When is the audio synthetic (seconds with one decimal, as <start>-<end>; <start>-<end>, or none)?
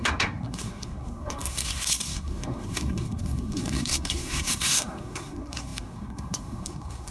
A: 0.0-7.1